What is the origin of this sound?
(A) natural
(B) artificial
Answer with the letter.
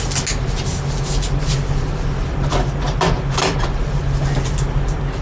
A